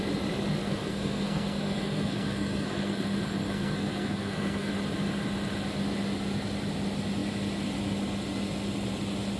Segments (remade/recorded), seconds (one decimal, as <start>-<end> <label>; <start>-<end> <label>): 0.0-0.6 recorded; 0.6-4.7 remade; 4.7-9.4 recorded